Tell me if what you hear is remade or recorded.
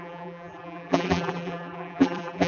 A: remade